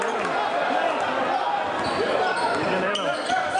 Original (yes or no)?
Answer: yes